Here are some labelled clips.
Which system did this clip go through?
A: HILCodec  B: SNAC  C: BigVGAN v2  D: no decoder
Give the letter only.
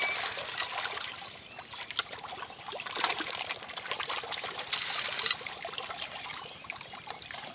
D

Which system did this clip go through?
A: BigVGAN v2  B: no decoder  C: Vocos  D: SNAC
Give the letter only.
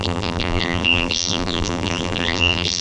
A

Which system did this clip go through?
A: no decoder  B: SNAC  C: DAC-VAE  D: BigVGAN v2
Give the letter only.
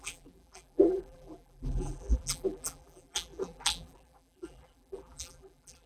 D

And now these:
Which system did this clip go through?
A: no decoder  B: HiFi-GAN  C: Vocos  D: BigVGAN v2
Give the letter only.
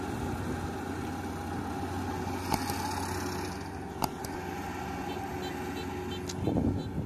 A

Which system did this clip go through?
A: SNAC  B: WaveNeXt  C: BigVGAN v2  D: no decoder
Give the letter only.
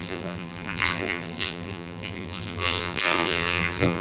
C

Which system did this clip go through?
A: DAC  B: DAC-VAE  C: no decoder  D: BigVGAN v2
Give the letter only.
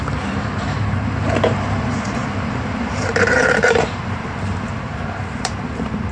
D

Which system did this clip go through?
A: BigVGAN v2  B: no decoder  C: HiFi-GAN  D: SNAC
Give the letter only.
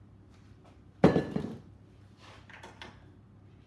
A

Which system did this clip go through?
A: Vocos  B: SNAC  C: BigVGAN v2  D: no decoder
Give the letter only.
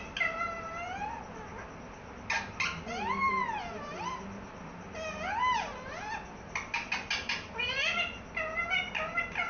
D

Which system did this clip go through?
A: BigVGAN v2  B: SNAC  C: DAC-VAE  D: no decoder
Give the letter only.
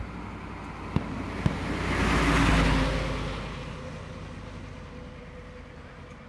D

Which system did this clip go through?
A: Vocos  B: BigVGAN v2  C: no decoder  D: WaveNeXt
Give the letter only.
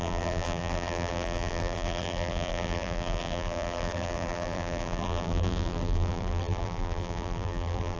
B